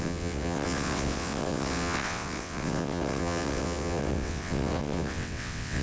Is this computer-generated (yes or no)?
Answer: yes